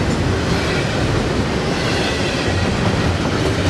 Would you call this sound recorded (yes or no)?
yes